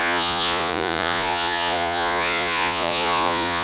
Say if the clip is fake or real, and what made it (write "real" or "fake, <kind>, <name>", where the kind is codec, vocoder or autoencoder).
fake, vocoder, Vocos